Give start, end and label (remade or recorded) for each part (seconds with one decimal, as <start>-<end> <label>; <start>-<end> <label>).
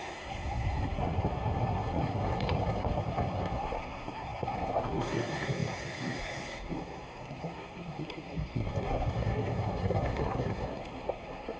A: 0.0-11.6 remade